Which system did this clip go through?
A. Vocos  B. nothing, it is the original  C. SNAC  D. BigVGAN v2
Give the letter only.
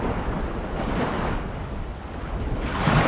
B